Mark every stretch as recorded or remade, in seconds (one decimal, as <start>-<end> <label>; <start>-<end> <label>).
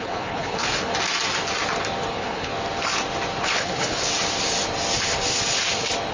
0.0-0.9 remade; 0.9-2.1 recorded; 2.1-2.5 remade; 2.5-3.4 recorded; 3.4-4.1 remade; 4.1-6.1 recorded